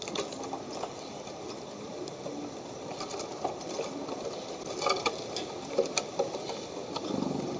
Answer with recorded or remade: recorded